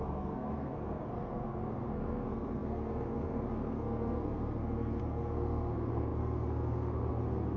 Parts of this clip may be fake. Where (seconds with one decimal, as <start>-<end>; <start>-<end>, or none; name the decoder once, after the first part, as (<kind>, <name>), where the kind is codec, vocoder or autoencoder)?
0.0-7.6 (codec, SNAC)